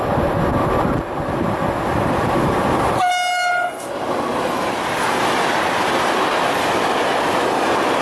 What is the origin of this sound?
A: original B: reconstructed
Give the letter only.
A